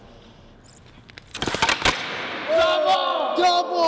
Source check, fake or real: real